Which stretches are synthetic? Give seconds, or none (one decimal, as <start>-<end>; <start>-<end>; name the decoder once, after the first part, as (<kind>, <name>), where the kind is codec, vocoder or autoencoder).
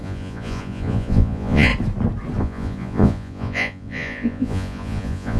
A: 0.0-1.7 (vocoder, Vocos); 2.4-5.4